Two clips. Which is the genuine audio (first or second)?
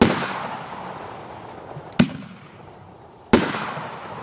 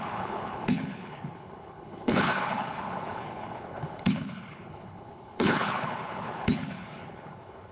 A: first